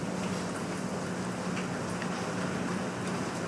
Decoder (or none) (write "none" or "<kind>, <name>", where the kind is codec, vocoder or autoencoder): none